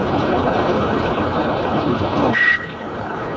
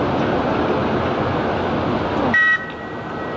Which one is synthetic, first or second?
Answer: first